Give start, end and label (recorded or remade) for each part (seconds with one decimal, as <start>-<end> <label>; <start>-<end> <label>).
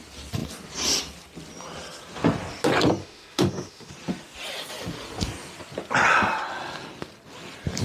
0.0-3.0 recorded; 3.0-3.9 remade; 3.9-7.8 recorded